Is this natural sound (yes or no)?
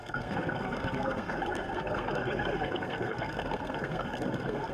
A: no